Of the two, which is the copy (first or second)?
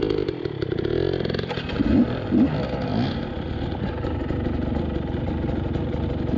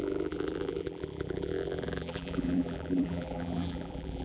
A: second